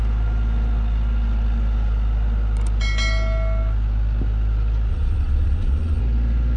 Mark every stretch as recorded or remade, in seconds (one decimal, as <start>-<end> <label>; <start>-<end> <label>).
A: 0.0-4.9 recorded; 4.9-6.0 remade; 6.0-6.6 recorded